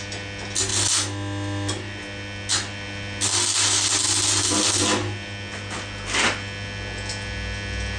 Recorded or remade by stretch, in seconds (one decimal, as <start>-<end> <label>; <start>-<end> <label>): 0.0-8.0 recorded